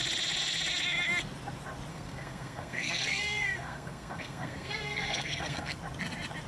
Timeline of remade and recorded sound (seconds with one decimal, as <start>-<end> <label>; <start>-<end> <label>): 0.0-1.9 recorded; 1.9-5.8 remade; 5.8-6.5 recorded